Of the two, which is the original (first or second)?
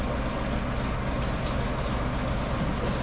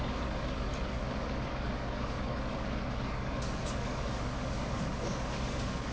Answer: first